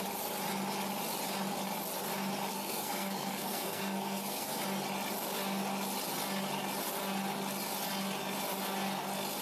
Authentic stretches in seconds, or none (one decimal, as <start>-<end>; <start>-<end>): 0.0-2.5; 4.6-9.4

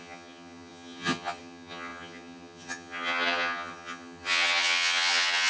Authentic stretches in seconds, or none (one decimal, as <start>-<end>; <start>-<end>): none

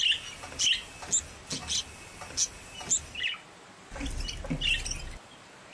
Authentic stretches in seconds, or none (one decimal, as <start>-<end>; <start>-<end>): 0.0-5.7

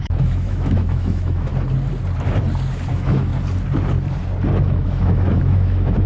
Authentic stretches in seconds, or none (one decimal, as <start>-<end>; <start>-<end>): 1.5-2.9; 3.3-4.6

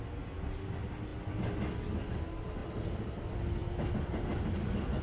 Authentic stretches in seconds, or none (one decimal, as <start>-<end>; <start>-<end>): 0.0-5.0